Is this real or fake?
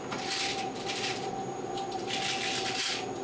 real